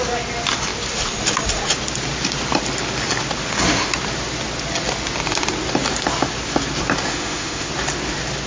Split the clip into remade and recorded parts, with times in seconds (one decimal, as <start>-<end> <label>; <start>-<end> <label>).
0.0-7.1 recorded; 7.1-7.7 remade; 7.7-8.5 recorded